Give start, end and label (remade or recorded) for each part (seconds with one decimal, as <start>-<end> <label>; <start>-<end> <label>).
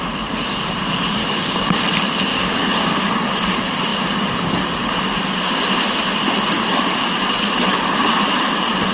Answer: 0.0-1.2 recorded; 1.2-1.8 remade; 1.8-2.3 recorded; 2.3-3.1 remade; 3.1-8.9 recorded